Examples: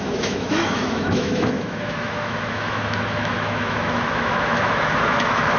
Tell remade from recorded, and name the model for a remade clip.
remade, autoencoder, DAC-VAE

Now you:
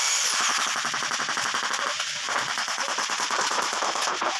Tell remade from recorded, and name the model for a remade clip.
remade, vocoder, BigVGAN v2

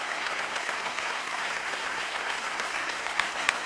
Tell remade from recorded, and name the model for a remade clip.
remade, codec, SNAC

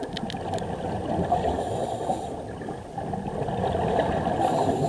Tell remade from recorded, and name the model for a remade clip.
recorded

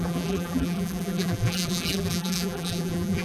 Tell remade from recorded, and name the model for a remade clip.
remade, vocoder, BigVGAN v2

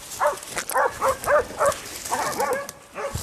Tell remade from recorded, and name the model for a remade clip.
recorded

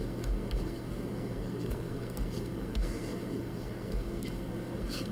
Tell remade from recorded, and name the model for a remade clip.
remade, codec, SNAC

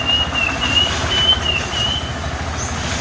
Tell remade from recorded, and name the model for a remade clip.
recorded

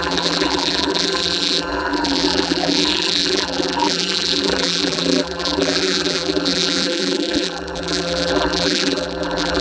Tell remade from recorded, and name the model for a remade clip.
remade, vocoder, BigVGAN v2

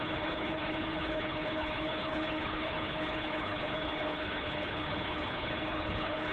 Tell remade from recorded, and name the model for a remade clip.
remade, codec, HILCodec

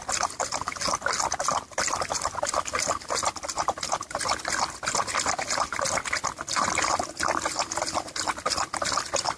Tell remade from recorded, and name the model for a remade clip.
recorded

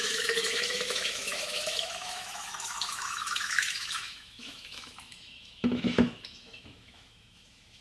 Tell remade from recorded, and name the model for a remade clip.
remade, autoencoder, DAC-VAE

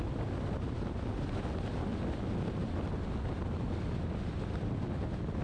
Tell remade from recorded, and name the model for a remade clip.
recorded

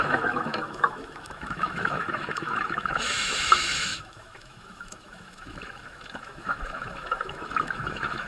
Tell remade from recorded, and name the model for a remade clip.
remade, autoencoder, DAC-VAE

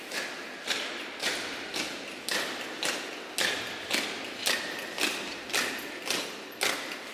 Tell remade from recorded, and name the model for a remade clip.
recorded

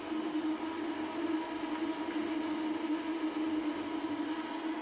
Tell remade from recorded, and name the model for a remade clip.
recorded